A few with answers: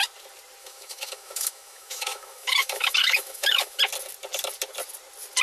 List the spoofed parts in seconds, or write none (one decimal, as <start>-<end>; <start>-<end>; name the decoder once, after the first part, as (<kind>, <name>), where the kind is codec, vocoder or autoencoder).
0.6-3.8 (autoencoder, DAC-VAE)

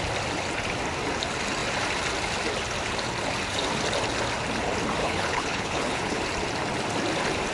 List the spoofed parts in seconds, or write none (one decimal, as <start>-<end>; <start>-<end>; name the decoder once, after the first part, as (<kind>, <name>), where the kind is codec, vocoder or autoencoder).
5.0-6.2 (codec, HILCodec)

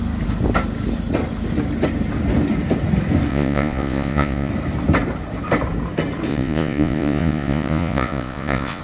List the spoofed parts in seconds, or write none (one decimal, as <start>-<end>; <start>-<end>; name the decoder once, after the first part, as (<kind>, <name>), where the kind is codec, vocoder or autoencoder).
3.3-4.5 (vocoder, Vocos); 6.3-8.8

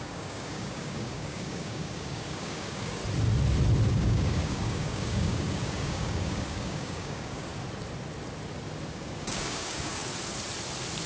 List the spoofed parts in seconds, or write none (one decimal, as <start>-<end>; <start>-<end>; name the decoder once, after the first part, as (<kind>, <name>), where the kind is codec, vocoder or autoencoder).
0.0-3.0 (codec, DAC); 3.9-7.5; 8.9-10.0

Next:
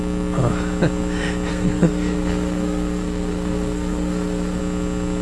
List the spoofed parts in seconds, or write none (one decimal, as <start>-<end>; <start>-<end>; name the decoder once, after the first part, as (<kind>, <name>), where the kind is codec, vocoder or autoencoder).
1.5-4.6 (codec, SNAC)